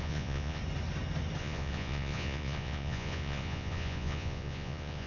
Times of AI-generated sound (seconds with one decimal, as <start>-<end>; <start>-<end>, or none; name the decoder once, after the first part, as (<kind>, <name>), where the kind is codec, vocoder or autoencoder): 0.0-0.6 (vocoder, Vocos); 1.4-5.1